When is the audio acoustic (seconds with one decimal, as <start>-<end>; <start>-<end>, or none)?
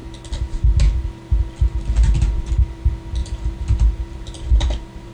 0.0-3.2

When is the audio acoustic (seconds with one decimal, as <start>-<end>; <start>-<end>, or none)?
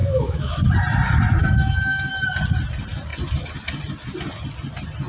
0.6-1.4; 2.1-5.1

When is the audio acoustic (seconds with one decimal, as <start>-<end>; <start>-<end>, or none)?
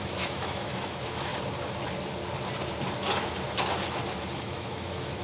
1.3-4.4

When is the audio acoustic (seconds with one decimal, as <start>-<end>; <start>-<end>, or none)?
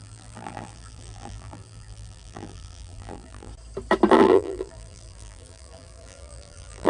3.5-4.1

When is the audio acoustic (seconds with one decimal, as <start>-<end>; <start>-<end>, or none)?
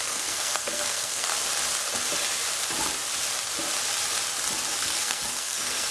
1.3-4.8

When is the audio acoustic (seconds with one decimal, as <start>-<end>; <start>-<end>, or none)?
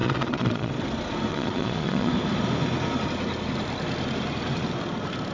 0.7-1.3; 2.1-5.3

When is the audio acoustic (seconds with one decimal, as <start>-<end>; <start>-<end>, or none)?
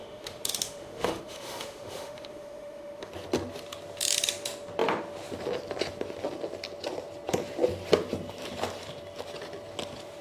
3.1-10.2